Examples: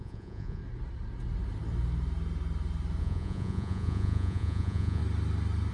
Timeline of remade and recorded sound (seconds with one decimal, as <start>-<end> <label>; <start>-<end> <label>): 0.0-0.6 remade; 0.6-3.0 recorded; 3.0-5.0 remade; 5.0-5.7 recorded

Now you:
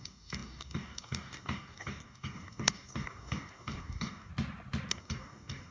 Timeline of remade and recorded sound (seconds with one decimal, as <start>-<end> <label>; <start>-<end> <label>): 0.0-4.3 remade; 4.3-4.9 recorded; 4.9-5.7 remade

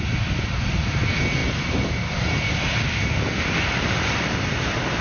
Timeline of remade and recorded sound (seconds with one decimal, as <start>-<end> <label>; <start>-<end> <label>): 0.0-5.0 recorded

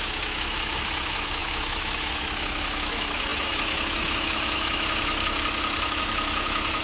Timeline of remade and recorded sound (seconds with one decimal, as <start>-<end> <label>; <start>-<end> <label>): 0.0-6.8 remade

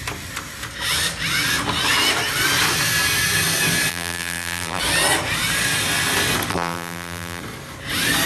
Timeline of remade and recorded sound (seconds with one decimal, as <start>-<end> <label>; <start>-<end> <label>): 0.0-3.9 recorded; 3.9-4.8 remade; 4.8-6.5 recorded; 6.5-7.4 remade; 7.4-8.3 recorded

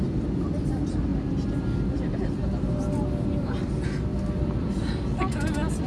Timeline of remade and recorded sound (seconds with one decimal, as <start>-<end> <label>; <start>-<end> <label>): 0.0-5.9 recorded

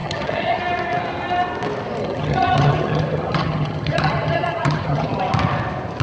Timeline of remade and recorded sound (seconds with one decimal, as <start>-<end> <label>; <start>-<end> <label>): 0.0-0.6 remade; 0.6-2.0 recorded; 2.0-5.2 remade; 5.2-6.0 recorded